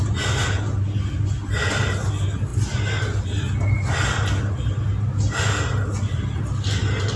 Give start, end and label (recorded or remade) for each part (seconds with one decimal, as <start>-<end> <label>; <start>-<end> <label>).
0.0-7.2 recorded